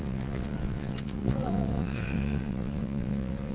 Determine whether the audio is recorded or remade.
remade